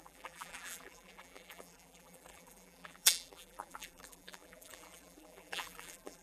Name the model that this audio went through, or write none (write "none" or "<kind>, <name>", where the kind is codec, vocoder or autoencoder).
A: vocoder, BigVGAN v2